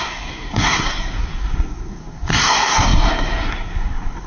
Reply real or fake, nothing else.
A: fake